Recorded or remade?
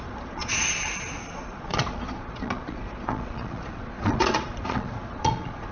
remade